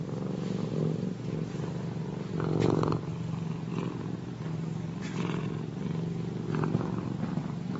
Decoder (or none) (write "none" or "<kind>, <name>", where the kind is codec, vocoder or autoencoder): none